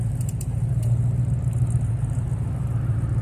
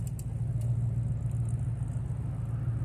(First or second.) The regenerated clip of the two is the first